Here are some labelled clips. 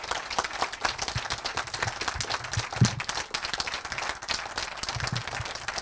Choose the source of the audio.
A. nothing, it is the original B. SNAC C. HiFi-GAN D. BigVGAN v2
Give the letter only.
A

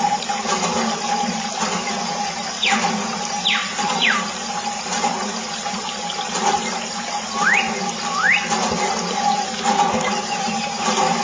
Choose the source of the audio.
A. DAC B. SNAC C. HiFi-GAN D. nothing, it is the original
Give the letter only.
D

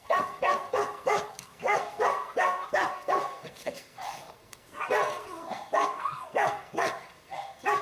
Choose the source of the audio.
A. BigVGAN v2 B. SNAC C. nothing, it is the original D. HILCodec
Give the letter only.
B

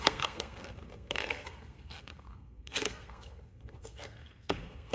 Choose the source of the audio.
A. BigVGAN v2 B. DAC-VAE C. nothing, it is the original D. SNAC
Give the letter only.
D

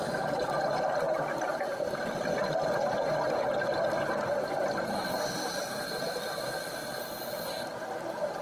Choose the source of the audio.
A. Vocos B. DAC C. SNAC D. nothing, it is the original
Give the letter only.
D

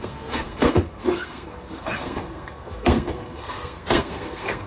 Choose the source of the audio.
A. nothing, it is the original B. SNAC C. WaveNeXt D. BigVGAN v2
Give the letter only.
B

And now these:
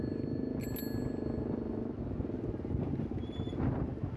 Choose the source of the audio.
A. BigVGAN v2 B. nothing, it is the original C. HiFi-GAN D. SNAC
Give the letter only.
B